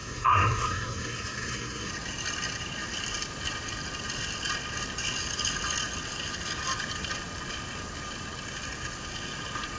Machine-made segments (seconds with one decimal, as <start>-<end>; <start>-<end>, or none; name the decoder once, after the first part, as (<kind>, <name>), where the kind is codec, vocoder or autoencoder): 0.0-1.9 (codec, SNAC)